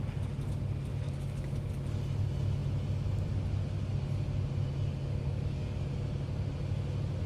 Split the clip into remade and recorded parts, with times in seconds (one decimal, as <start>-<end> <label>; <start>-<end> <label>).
0.0-0.9 recorded; 0.9-1.7 remade; 1.7-4.9 recorded; 4.9-5.8 remade; 5.8-7.3 recorded